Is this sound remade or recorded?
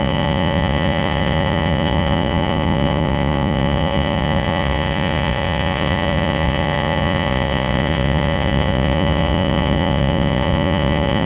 remade